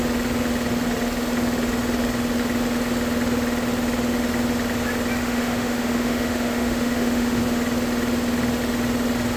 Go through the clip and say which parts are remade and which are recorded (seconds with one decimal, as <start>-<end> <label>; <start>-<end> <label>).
0.0-5.2 recorded; 5.2-7.4 remade; 7.4-9.4 recorded